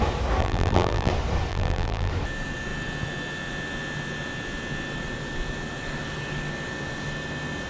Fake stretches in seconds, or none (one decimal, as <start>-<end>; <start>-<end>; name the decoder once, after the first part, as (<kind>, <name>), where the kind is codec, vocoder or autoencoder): 0.4-1.1 (vocoder, BigVGAN v2); 1.5-2.1